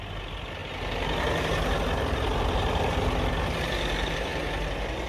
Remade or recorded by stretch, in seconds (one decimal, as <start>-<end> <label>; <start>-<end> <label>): 0.0-0.6 remade; 0.6-2.1 recorded; 2.1-4.3 remade; 4.3-5.1 recorded